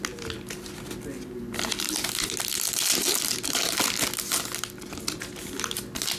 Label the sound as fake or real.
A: real